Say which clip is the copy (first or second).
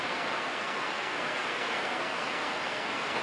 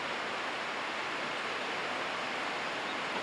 first